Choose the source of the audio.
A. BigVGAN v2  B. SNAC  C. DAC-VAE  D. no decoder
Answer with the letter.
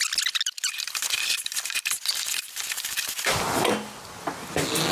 D